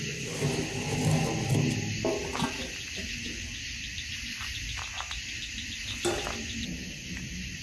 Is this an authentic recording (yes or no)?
yes